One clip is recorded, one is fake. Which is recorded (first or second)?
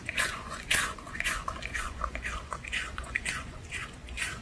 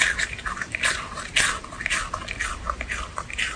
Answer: second